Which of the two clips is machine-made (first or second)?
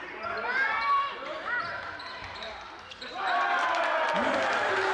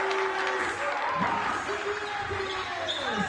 first